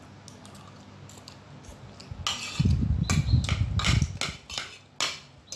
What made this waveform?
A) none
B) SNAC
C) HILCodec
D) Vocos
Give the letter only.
A